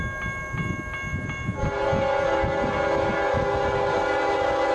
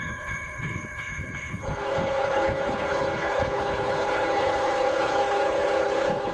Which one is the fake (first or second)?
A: second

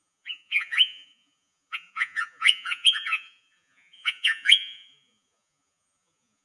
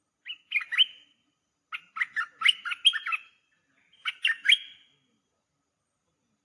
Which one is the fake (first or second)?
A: first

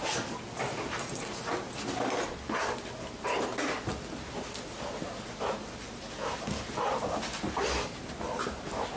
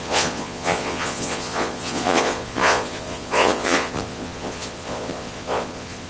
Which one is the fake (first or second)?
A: second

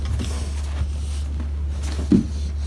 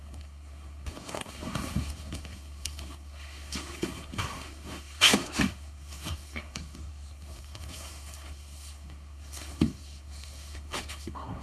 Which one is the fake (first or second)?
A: second